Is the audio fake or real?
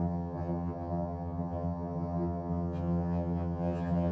fake